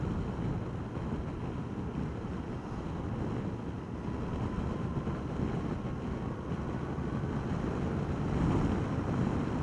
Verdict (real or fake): real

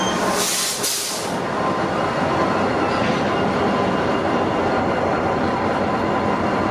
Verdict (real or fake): real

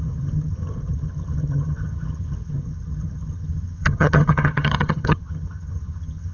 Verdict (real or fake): fake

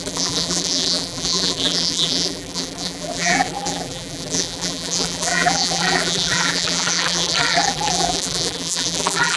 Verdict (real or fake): fake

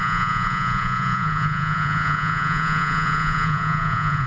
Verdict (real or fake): fake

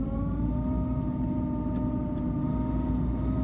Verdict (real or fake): real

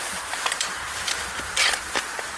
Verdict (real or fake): real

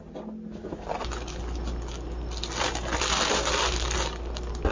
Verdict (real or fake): real